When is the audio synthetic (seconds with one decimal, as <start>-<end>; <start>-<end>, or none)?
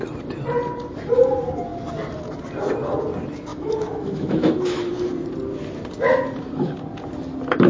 3.5-4.9